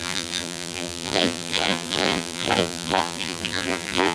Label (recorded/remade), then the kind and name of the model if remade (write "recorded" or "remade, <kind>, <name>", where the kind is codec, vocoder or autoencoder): remade, vocoder, BigVGAN v2